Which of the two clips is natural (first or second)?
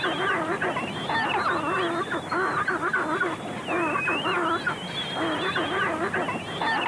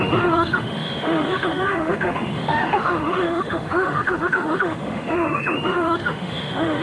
first